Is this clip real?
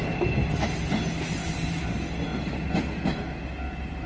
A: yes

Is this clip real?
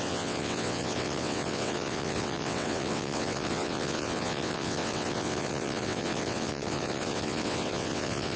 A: no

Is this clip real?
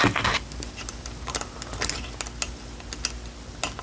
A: yes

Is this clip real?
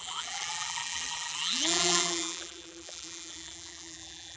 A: no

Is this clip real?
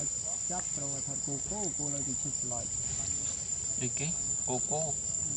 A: yes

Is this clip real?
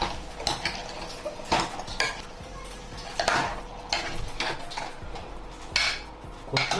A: yes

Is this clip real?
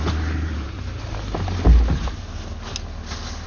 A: yes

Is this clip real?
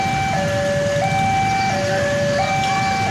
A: yes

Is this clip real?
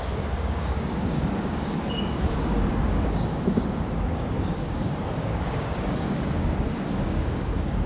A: no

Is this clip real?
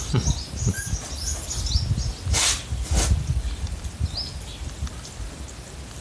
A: yes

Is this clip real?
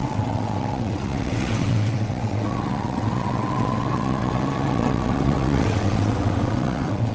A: no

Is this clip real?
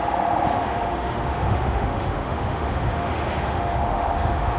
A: no